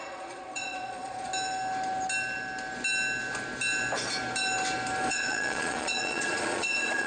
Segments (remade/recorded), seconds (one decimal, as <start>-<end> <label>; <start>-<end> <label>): 0.0-1.3 remade; 1.3-5.1 recorded; 5.1-7.1 remade